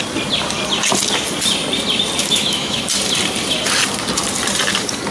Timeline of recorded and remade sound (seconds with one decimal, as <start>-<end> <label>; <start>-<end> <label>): 0.0-2.2 recorded; 2.2-2.8 remade; 2.8-5.1 recorded